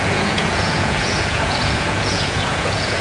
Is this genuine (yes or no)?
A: no